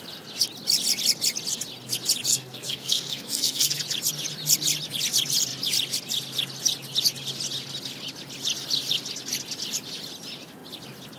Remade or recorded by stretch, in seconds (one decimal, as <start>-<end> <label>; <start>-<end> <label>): 0.0-2.3 recorded; 2.3-3.8 remade; 3.8-11.2 recorded